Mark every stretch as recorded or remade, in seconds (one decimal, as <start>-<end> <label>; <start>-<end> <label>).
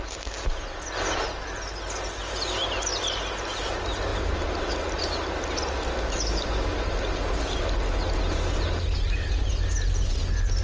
0.0-10.6 recorded